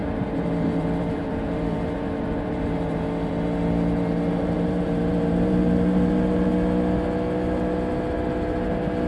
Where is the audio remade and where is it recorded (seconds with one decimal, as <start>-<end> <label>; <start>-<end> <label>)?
0.0-6.5 remade; 6.5-9.1 recorded